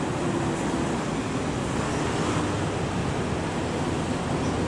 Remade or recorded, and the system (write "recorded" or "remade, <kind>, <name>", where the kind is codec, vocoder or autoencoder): recorded